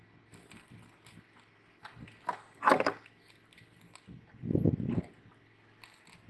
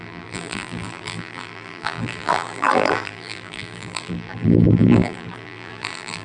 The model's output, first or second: second